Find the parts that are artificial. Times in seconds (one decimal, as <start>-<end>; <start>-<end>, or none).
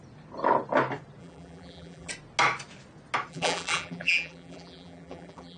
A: 1.2-2.1; 3.3-5.6